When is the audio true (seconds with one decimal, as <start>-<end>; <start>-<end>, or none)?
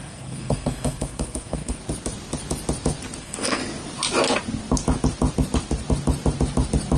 1.8-3.2; 3.6-7.0